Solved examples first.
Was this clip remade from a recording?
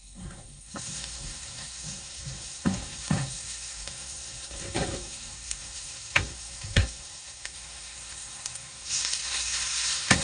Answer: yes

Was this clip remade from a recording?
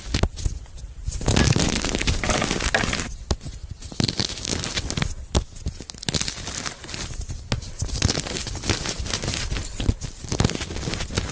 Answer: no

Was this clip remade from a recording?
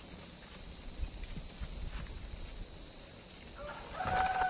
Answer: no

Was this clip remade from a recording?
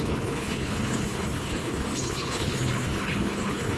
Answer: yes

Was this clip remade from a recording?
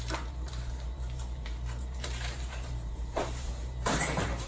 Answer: yes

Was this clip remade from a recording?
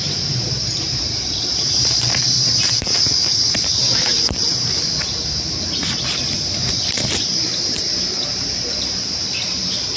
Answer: yes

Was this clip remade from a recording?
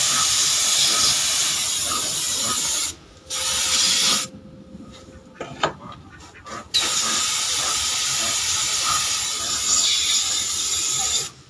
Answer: no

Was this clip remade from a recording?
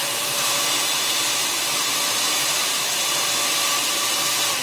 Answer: yes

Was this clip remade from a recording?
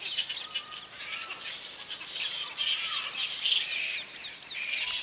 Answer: no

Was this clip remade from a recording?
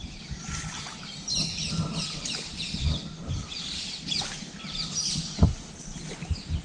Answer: no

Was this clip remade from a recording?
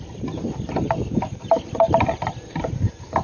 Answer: no